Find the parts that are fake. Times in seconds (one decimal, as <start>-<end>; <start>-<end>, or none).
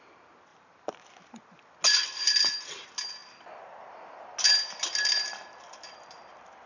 0.5-1.6